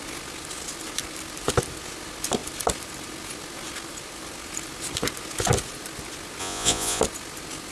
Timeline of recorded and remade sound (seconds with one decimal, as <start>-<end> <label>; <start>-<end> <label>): 0.0-6.4 recorded; 6.4-7.0 remade; 7.0-7.7 recorded

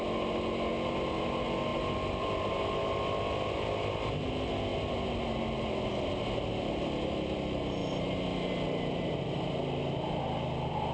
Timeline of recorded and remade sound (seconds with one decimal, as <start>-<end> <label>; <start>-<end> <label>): 0.0-10.9 recorded